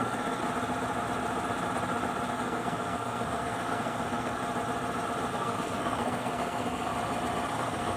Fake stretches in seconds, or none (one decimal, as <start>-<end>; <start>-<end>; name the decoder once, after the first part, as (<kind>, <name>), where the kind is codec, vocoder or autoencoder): 0.0-0.4 (codec, SNAC); 2.3-4.4; 5.3-6.9; 7.5-8.0